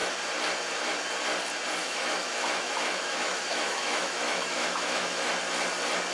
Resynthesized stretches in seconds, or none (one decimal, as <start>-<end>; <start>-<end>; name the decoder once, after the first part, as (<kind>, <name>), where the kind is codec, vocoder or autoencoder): 1.8-5.3 (autoencoder, DAC-VAE)